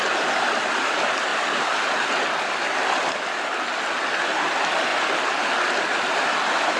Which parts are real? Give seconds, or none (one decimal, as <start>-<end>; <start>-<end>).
0.0-6.8